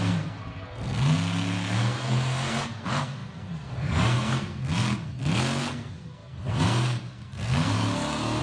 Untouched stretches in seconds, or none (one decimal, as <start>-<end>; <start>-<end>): none